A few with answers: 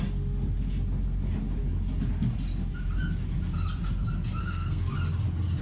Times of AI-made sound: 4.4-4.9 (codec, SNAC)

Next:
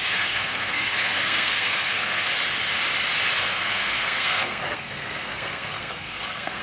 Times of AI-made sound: 0.0-2.3 (codec, SNAC); 3.4-6.6